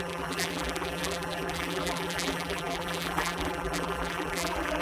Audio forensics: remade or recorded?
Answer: remade